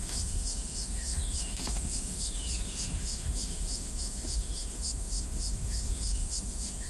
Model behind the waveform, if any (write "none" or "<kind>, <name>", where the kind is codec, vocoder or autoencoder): autoencoder, DAC-VAE